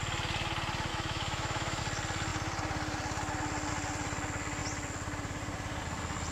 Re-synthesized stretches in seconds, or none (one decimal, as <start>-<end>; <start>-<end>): 0.9-1.8